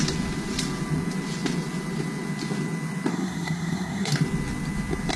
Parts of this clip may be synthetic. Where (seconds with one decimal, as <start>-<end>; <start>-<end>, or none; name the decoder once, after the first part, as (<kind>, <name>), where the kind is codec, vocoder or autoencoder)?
3.1-4.1 (codec, SNAC)